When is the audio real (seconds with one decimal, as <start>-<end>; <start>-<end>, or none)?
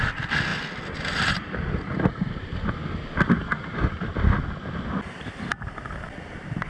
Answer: 0.0-6.7